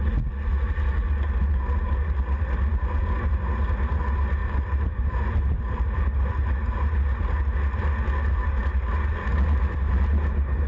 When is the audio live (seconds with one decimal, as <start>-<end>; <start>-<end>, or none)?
0.0-4.4; 6.2-10.7